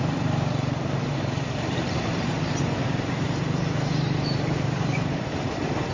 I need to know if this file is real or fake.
fake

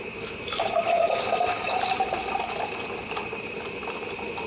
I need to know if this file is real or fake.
fake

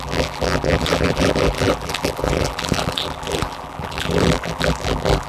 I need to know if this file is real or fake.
fake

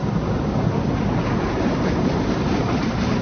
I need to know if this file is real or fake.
fake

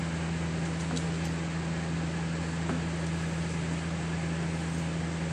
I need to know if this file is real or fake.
real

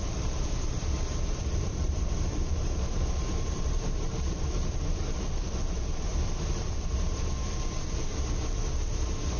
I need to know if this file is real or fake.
fake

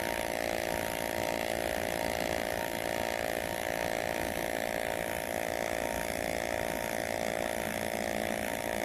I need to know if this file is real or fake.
real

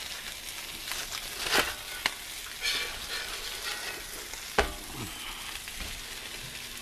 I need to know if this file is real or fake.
real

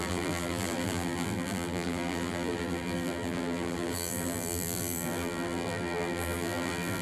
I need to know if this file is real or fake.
fake